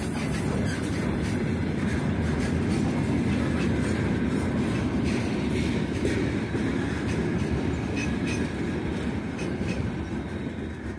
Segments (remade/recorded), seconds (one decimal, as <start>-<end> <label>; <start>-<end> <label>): 0.0-11.0 recorded